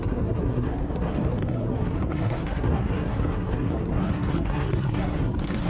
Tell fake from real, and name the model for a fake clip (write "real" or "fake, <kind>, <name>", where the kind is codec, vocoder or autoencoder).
fake, codec, SNAC